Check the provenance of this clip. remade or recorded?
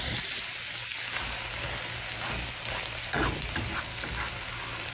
recorded